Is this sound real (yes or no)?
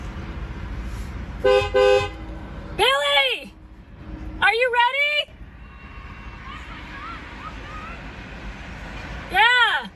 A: yes